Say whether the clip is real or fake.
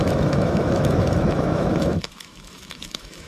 fake